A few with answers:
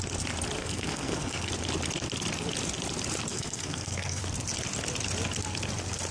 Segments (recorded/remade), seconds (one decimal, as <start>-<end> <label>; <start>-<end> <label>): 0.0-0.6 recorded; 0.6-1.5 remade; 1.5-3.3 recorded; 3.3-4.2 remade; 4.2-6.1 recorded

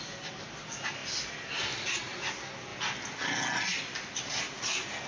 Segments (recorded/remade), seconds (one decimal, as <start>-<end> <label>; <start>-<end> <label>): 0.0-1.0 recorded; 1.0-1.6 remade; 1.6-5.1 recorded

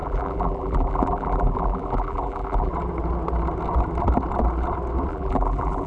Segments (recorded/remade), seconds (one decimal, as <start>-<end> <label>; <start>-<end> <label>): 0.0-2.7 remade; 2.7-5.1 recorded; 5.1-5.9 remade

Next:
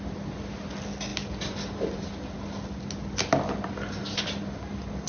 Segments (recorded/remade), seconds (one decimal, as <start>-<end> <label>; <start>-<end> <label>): 0.0-5.1 recorded

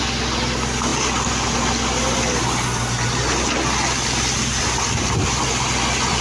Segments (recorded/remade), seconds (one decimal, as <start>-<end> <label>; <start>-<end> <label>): 0.0-6.2 recorded

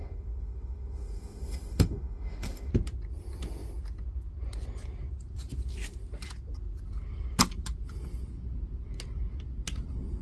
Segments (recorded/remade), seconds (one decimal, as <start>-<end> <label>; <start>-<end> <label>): 0.0-2.7 remade; 2.7-10.2 recorded

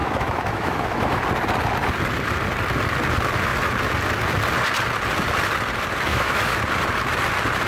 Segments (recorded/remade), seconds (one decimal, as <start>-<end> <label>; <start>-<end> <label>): 0.0-1.2 remade; 1.2-6.1 recorded; 6.1-6.6 remade; 6.6-7.7 recorded

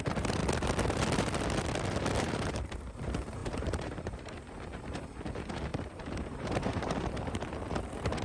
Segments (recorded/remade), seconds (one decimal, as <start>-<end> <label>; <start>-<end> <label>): 0.0-0.4 remade; 0.4-2.2 recorded; 2.2-8.2 remade